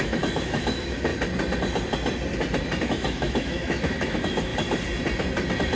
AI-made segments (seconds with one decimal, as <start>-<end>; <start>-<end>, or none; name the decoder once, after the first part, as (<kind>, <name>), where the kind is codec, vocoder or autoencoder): 0.0-1.1 (autoencoder, DAC-VAE); 2.8-4.5

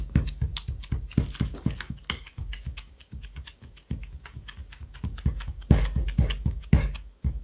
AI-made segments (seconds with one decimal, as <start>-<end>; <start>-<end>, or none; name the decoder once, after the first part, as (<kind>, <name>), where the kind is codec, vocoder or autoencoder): 0.0-0.5 (codec, DAC); 1.4-7.4

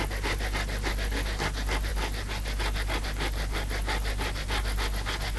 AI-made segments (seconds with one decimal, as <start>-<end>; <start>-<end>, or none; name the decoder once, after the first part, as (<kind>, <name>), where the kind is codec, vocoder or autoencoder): none

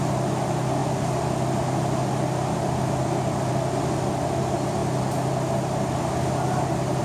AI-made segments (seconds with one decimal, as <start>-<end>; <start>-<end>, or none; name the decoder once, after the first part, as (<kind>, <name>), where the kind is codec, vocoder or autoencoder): none

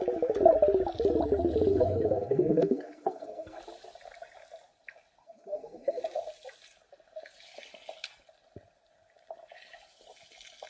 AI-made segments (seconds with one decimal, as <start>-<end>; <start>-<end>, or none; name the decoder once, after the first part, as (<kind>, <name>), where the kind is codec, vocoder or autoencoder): 1.7-3.6 (codec, SNAC); 5.2-6.0

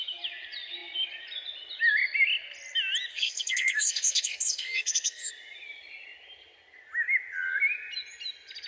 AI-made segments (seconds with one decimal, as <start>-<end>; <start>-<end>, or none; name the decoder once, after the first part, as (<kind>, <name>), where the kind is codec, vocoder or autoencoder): 3.1-5.3 (codec, SNAC)